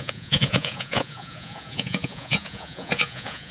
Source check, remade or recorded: remade